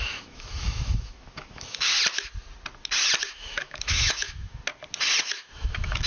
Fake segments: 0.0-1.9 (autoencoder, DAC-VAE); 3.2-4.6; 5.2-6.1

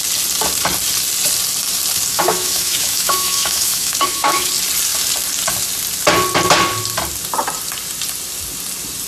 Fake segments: 2.1-4.5 (autoencoder, DAC-VAE)